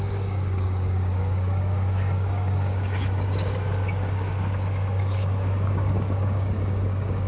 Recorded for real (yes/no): no